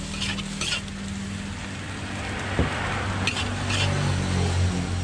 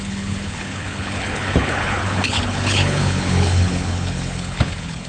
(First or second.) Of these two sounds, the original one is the first